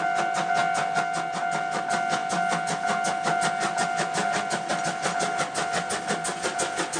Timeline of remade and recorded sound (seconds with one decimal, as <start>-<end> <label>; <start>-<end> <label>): 0.0-7.0 recorded